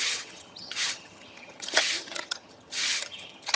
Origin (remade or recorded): remade